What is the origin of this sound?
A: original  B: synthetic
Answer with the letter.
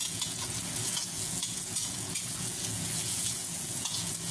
B